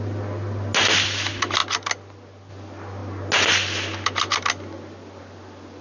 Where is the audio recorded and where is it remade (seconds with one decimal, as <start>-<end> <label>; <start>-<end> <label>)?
0.0-5.8 recorded